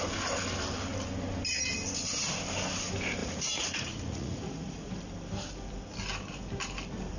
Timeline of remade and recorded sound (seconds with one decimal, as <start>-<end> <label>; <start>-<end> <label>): 0.0-3.2 recorded; 3.2-4.9 remade; 4.9-7.2 recorded